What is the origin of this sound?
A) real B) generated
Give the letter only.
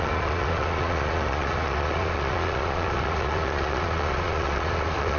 B